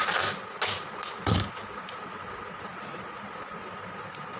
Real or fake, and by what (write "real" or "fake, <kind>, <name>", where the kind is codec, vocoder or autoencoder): real